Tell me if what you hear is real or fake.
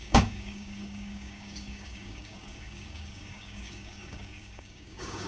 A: fake